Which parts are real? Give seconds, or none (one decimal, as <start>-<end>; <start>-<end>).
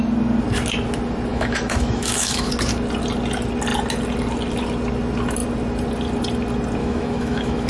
0.0-1.3; 2.5-6.8